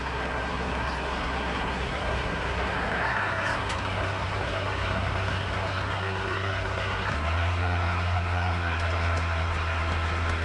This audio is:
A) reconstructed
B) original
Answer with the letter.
A